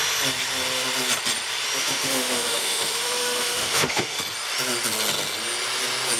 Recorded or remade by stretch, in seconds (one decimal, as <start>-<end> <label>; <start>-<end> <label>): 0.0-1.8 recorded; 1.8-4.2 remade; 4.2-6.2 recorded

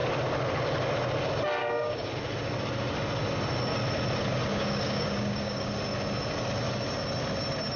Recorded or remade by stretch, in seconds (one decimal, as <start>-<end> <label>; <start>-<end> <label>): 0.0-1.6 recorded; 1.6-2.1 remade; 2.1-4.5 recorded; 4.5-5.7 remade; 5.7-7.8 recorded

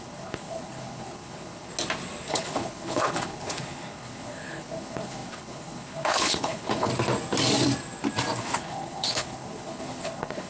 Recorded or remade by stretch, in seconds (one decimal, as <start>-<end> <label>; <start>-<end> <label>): 0.0-1.7 remade; 1.7-2.3 recorded; 2.3-6.9 remade; 6.9-8.4 recorded; 8.4-10.5 remade

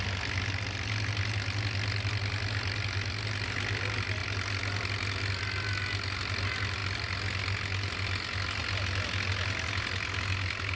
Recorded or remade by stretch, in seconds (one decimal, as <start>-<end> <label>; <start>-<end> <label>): 0.0-10.8 recorded

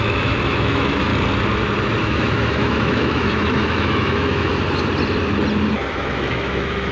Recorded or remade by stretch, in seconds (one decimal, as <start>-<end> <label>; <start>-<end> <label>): 0.0-1.1 remade; 1.1-2.0 recorded; 2.0-4.5 remade; 4.5-5.9 recorded; 5.9-6.9 remade